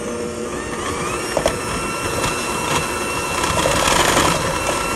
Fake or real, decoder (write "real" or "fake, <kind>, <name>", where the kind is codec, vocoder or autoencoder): real